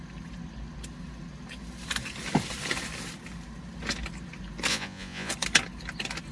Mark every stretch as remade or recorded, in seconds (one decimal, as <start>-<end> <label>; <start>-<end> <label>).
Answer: 0.0-4.7 recorded; 4.7-5.3 remade; 5.3-6.3 recorded